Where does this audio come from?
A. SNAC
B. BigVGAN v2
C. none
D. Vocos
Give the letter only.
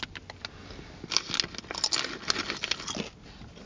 C